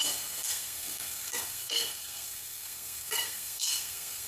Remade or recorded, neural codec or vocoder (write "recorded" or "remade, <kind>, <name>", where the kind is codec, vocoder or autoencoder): remade, codec, SNAC